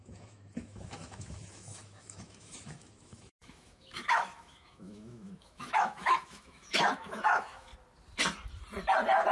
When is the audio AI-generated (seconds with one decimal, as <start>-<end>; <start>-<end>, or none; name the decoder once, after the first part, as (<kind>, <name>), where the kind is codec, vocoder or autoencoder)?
0.0-7.7 (autoencoder, DAC-VAE)

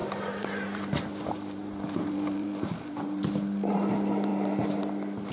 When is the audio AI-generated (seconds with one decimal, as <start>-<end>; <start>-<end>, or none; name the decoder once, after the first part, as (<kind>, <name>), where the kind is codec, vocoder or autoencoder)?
0.0-3.2 (vocoder, BigVGAN v2); 4.3-4.8

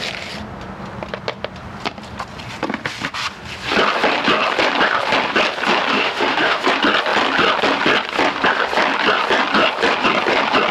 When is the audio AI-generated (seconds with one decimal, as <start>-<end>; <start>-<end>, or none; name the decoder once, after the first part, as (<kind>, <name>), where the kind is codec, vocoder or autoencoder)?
5.9-6.6 (autoencoder, DAC-VAE)